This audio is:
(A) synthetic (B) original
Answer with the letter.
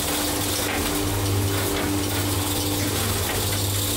B